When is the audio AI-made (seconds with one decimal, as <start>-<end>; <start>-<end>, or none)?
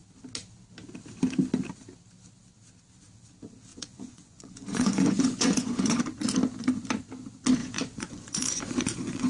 3.7-6.0; 7.6-9.3